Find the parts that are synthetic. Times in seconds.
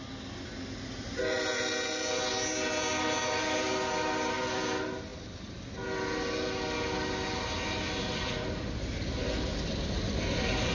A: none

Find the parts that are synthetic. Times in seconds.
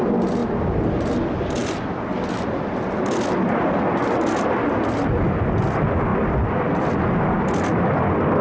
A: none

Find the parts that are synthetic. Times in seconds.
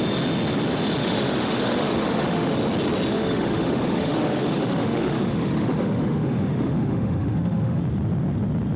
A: 1.0-2.6 (autoencoder, DAC-VAE); 3.1-7.8